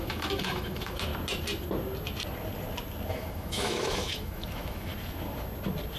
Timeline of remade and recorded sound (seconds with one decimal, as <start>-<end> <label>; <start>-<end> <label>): 0.0-1.1 remade; 1.1-3.1 recorded; 3.1-4.9 remade; 4.9-6.0 recorded